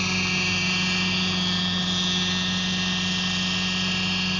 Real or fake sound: real